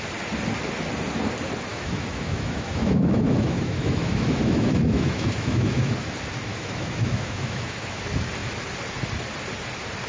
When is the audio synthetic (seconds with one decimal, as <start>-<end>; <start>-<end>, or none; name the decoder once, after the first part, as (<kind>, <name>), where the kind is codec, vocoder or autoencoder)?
1.7-5.9 (autoencoder, DAC-VAE); 6.5-8.0